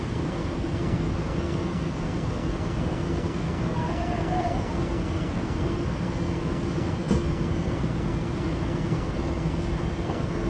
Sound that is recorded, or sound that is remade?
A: remade